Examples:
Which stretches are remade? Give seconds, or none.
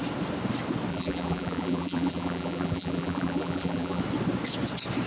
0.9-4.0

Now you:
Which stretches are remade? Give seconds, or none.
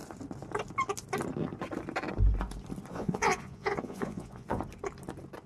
2.9-4.6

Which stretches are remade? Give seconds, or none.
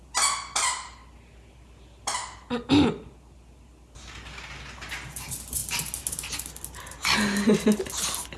none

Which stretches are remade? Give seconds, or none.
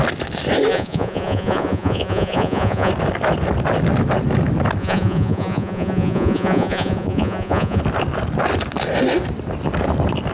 0.7-2.9; 4.8-7.8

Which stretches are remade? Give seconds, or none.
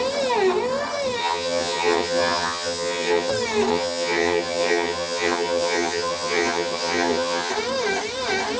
1.2-3.3; 3.7-7.5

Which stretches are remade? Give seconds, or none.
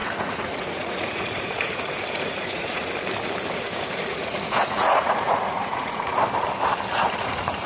0.0-2.8; 3.6-6.1; 7.2-7.7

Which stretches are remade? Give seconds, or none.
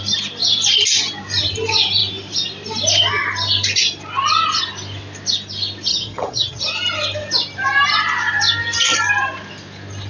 5.9-6.6